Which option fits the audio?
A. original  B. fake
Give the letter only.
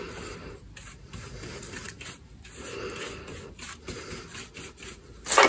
A